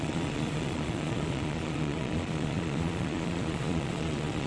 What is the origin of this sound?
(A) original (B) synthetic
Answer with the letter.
B